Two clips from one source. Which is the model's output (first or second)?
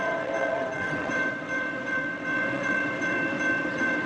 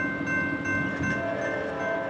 first